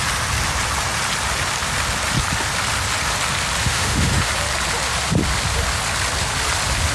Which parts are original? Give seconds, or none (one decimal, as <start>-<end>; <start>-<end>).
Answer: 0.0-3.6; 4.3-6.9